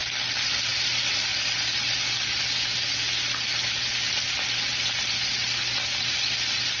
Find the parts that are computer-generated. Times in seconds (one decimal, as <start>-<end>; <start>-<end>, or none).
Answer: none